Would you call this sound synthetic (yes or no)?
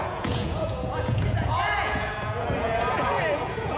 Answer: yes